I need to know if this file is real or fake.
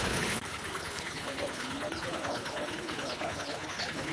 fake